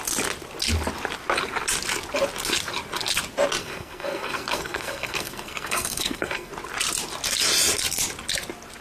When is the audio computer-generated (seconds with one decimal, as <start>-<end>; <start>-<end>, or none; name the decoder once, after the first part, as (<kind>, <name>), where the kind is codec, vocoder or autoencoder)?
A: 3.6-6.5 (codec, SNAC)